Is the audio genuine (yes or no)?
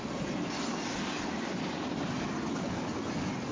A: yes